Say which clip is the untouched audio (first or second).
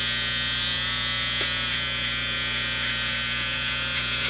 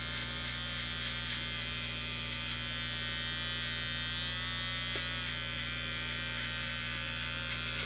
second